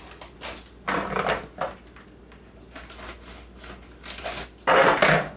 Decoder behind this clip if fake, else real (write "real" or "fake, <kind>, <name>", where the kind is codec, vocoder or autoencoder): real